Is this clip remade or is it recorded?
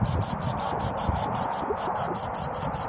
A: recorded